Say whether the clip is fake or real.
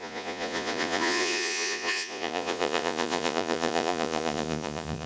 fake